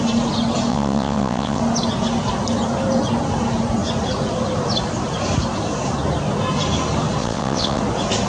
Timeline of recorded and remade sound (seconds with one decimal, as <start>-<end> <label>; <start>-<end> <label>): 0.0-0.7 recorded; 0.7-1.6 remade; 1.6-7.2 recorded; 7.2-7.8 remade; 7.8-8.3 recorded